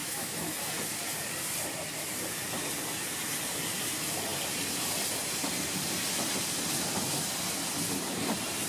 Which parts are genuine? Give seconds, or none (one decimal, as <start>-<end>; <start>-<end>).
0.5-8.7